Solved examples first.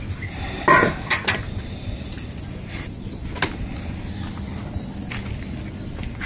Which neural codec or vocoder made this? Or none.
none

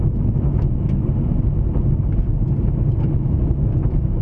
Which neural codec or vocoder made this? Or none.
none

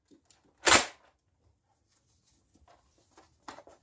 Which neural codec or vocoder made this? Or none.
none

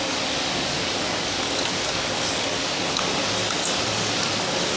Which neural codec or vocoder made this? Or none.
codec, DAC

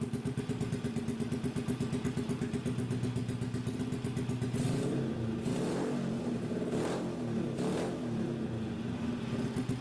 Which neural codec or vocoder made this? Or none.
none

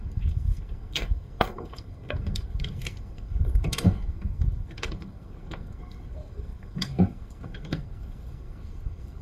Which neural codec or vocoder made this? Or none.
codec, SNAC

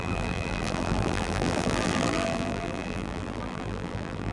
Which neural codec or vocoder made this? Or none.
vocoder, BigVGAN v2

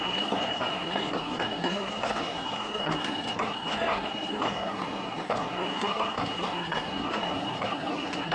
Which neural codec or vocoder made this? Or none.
codec, SNAC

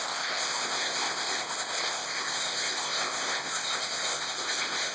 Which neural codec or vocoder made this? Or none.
codec, ZipCodec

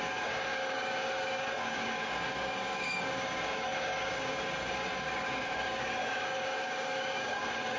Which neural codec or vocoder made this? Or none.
codec, DAC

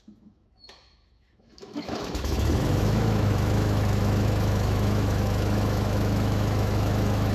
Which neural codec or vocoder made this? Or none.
autoencoder, DAC-VAE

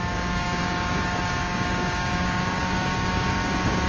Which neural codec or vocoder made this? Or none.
codec, DAC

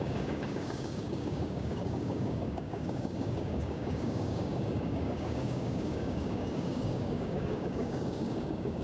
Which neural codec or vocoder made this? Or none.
codec, DAC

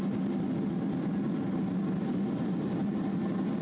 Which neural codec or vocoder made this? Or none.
none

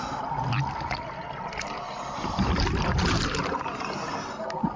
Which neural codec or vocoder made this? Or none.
none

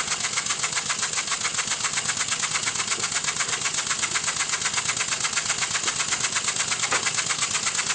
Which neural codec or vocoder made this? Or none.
none